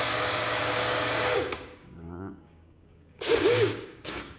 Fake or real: fake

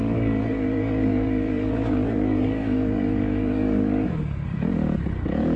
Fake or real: fake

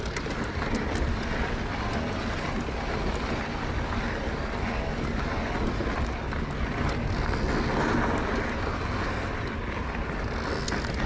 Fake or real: real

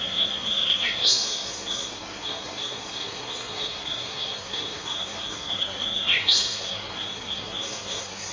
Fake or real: fake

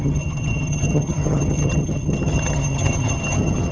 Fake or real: fake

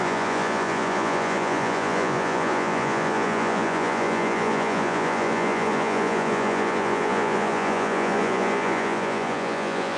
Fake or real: fake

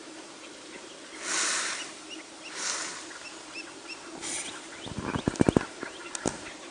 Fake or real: real